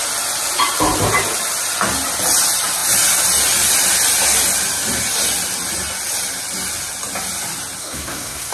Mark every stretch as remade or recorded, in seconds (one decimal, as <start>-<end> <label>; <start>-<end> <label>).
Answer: 0.0-7.8 recorded; 7.8-8.5 remade